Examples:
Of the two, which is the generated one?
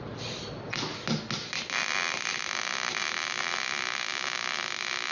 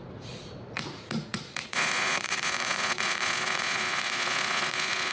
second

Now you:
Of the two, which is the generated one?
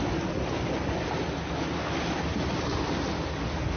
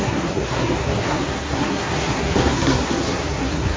second